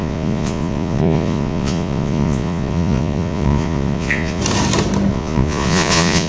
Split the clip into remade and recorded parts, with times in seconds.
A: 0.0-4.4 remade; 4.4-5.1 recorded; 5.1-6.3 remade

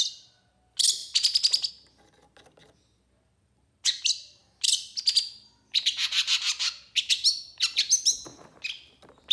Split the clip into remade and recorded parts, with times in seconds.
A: 0.0-9.3 recorded

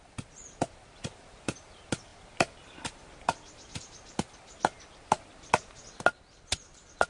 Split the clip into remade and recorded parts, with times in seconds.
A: 0.0-7.1 recorded